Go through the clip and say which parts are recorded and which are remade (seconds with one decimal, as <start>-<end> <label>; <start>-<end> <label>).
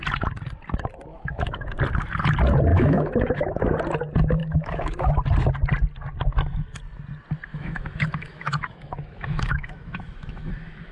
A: 0.0-1.1 recorded; 1.1-1.8 remade; 1.8-2.7 recorded; 2.7-3.6 remade; 3.6-4.4 recorded; 4.4-5.1 remade; 5.1-7.5 recorded; 7.5-10.5 remade; 10.5-10.9 recorded